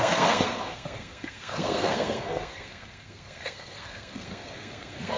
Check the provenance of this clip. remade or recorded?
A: remade